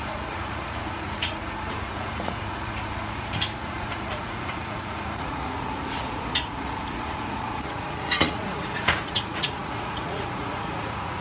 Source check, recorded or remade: remade